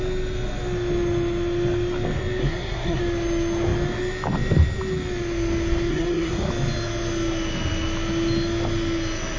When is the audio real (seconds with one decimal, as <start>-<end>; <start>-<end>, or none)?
0.0-2.4; 3.0-5.9; 6.5-9.4